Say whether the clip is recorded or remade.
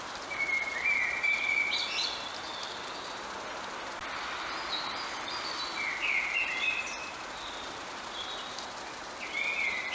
recorded